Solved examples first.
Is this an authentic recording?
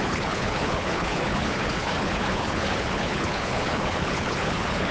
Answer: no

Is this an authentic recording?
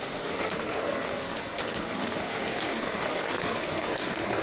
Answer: no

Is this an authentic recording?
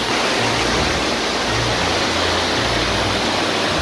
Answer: yes